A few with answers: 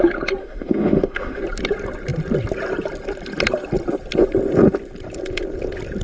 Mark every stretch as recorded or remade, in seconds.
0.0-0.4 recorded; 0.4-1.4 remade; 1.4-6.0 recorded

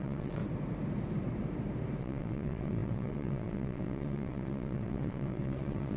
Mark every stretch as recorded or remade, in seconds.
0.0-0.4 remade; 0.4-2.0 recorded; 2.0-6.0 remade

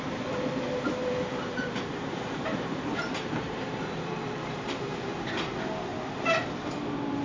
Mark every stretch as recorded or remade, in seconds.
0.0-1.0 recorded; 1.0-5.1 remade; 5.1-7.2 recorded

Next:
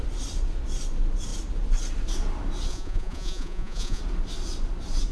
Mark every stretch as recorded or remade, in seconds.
0.0-2.7 recorded; 2.7-4.0 remade; 4.0-5.1 recorded